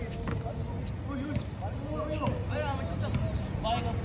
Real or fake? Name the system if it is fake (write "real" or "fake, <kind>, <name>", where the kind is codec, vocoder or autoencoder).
real